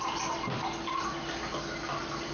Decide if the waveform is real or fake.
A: real